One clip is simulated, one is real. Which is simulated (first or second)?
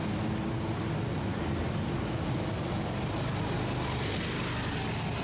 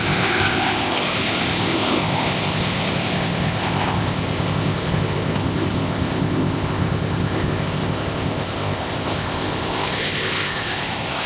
second